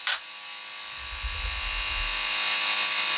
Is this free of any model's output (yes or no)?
yes